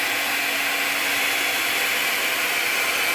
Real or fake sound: real